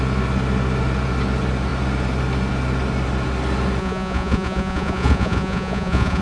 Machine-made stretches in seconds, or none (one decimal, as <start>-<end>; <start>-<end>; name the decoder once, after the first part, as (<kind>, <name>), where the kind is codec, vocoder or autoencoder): 3.8-6.2 (vocoder, Vocos)